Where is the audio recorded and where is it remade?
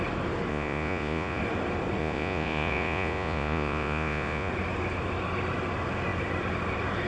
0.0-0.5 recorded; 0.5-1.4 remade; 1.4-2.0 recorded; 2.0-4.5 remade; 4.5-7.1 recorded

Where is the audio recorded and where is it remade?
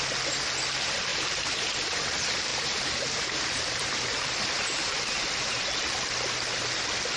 0.0-1.1 recorded; 1.1-1.7 remade; 1.7-2.5 recorded; 2.5-5.6 remade; 5.6-7.2 recorded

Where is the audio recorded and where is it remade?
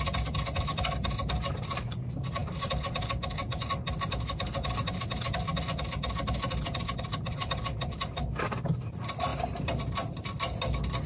0.0-11.1 recorded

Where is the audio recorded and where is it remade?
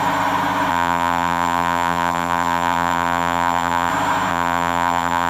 0.0-0.7 recorded; 0.7-3.9 remade; 3.9-4.3 recorded; 4.3-5.3 remade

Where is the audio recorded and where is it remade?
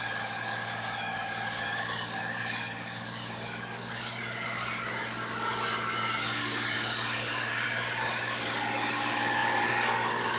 0.0-10.4 remade